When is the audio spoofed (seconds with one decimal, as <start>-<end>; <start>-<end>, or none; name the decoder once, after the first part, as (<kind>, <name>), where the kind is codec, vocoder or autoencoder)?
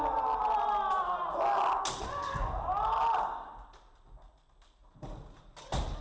4.8-5.5 (vocoder, BigVGAN v2)